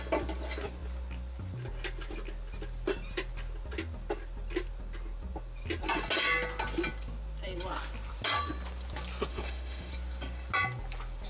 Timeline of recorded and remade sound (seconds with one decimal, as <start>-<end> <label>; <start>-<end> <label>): 0.0-9.3 recorded; 9.3-9.9 remade; 9.9-11.3 recorded